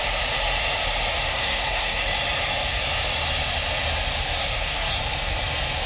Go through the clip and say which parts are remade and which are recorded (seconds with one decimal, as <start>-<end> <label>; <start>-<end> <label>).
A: 0.0-1.3 recorded; 1.3-2.0 remade; 2.0-4.4 recorded; 4.4-5.0 remade; 5.0-5.9 recorded